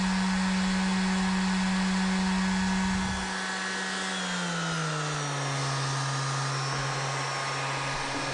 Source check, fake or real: real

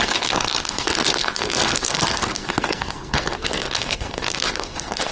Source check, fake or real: fake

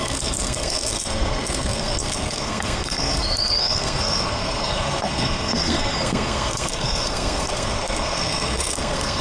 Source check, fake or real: fake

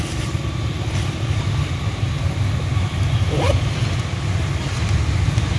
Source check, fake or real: real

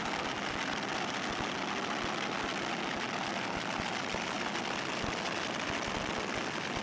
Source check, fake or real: real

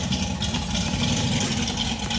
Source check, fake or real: real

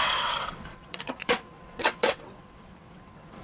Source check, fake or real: fake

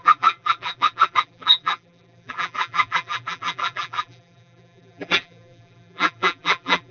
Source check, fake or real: fake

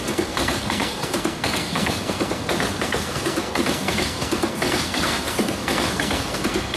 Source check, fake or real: fake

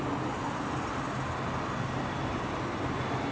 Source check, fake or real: real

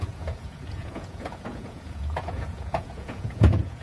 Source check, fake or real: fake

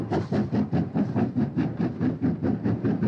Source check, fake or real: real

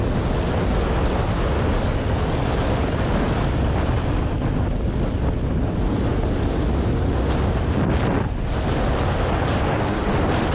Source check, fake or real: real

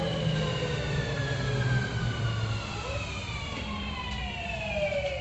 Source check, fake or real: real